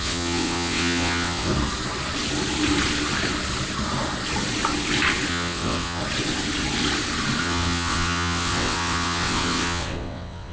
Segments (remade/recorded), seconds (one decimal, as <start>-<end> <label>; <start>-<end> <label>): 0.0-1.5 remade; 1.5-5.3 recorded; 5.3-6.0 remade; 6.0-7.4 recorded; 7.4-10.5 remade